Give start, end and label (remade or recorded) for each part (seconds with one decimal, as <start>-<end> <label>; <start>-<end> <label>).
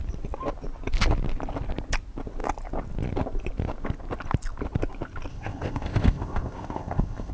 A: 0.0-5.3 recorded; 5.3-7.3 remade